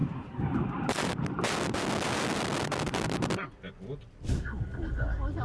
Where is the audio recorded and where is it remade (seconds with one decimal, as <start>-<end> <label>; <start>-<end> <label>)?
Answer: 0.0-1.1 remade; 1.1-5.4 recorded